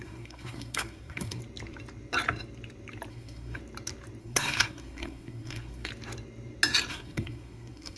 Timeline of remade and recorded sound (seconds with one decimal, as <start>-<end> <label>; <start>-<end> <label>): 0.0-1.4 remade; 1.4-3.1 recorded; 3.1-3.6 remade; 3.6-4.2 recorded; 4.2-5.9 remade; 5.9-6.9 recorded; 6.9-8.0 remade